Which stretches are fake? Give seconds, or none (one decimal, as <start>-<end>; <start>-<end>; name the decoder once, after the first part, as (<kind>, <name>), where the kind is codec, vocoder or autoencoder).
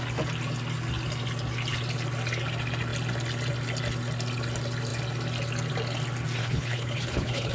6.4-7.5 (codec, HILCodec)